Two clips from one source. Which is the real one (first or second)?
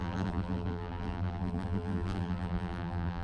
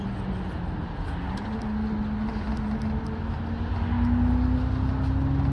second